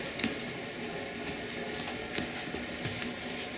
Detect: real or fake real